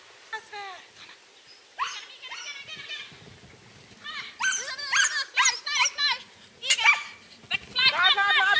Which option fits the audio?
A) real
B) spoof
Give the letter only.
A